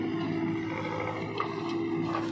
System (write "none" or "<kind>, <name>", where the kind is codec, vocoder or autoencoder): none